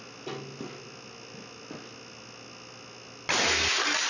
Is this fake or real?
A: real